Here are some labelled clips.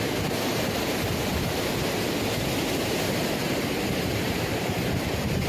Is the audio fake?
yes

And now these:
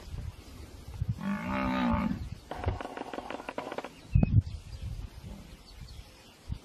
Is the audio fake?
no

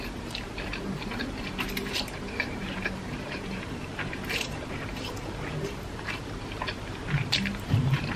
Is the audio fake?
yes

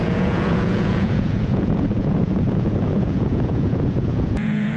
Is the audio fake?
yes